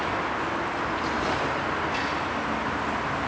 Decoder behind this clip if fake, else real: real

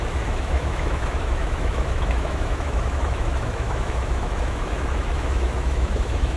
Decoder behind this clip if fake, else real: fake, autoencoder, DAC-VAE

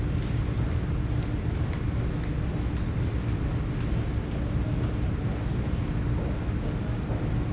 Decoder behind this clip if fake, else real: real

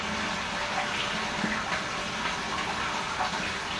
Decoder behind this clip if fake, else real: real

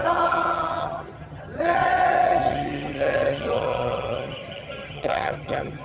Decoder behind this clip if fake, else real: fake, vocoder, HiFi-GAN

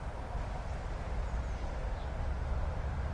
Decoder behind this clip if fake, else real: real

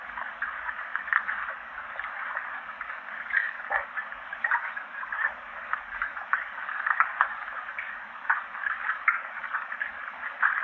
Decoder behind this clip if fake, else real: fake, codec, DAC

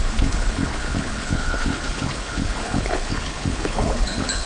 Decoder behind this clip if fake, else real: fake, codec, HILCodec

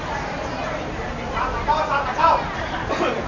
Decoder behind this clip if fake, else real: real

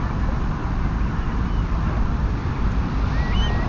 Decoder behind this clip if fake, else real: real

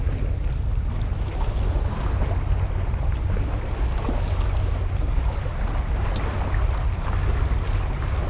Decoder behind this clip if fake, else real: real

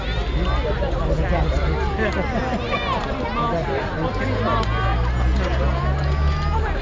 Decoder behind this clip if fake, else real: real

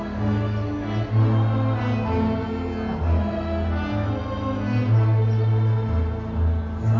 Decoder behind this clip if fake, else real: real